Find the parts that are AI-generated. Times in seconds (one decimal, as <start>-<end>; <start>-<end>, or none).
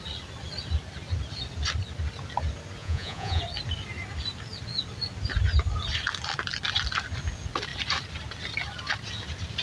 2.8-3.4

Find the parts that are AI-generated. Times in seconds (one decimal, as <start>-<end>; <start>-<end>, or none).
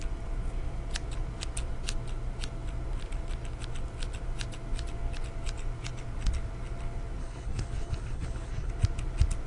7.2-8.7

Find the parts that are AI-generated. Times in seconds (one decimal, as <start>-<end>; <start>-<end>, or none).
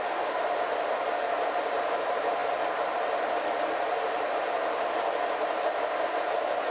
none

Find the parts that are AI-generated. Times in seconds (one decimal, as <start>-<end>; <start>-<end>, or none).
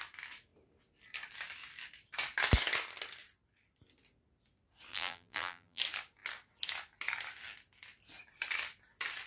4.9-5.8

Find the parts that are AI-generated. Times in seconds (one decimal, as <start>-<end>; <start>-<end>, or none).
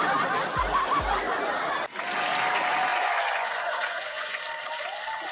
2.9-4.4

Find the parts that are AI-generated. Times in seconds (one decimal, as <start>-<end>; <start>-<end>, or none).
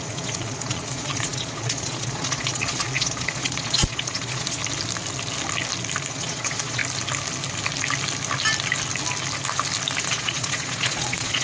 0.0-4.6; 6.1-6.8; 10.0-11.4